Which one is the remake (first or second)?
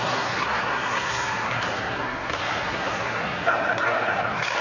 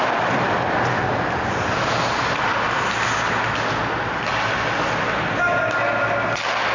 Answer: first